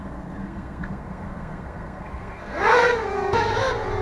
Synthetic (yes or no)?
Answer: yes